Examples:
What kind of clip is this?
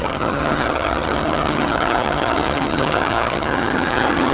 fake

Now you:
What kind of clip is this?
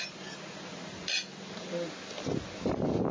real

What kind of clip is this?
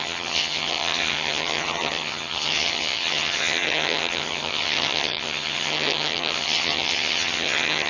fake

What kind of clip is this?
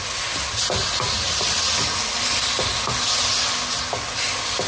real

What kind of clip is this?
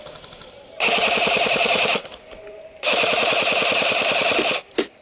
real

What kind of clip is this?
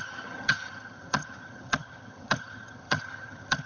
fake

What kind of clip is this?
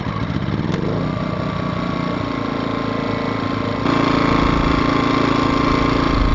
real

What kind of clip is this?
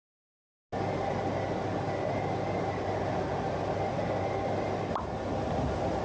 real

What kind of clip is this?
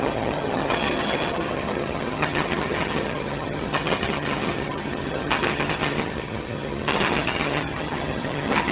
fake